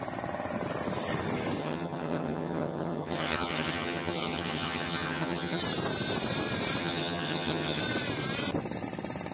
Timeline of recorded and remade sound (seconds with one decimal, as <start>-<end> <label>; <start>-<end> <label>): 0.0-1.6 recorded; 1.6-5.6 remade; 5.6-6.8 recorded; 6.8-7.8 remade; 7.8-9.3 recorded